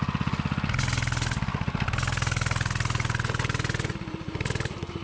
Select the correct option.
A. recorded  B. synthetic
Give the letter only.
A